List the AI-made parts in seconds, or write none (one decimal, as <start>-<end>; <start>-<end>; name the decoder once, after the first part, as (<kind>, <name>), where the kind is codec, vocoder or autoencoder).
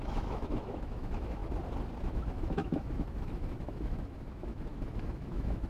0.0-1.4 (autoencoder, DAC-VAE); 2.0-5.7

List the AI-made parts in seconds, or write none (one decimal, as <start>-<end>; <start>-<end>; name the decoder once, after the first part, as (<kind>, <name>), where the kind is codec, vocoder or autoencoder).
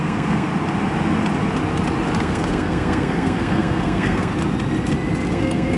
0.0-0.5 (codec, SNAC); 2.2-4.3; 5.3-5.8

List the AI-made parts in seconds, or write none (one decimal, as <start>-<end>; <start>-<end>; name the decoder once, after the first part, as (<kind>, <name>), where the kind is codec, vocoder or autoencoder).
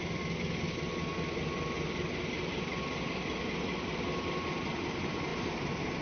none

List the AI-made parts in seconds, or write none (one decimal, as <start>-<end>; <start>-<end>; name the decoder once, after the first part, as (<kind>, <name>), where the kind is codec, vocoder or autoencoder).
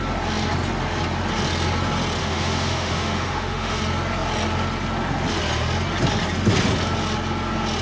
2.2-3.8 (autoencoder, DAC-VAE)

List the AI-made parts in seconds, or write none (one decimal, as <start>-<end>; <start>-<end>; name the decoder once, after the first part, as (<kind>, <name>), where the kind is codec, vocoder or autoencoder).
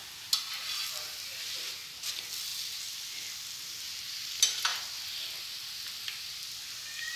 none